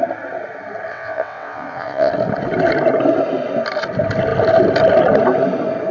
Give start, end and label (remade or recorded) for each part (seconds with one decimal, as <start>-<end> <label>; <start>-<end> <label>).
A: 0.0-0.9 recorded; 0.9-2.1 remade; 2.1-5.9 recorded

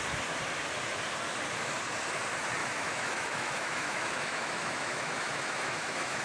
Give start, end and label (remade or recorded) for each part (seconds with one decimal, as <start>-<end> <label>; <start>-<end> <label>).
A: 0.0-2.6 recorded; 2.6-6.2 remade